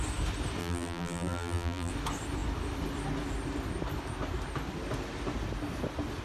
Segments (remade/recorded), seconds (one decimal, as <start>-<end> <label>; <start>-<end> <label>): 0.0-0.6 recorded; 0.6-1.9 remade; 1.9-6.2 recorded